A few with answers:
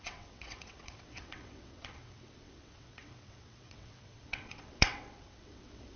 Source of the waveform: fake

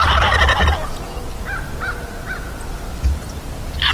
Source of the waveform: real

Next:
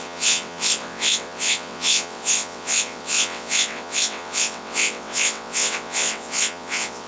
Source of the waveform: fake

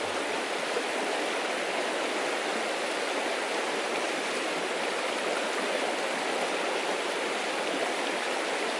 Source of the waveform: real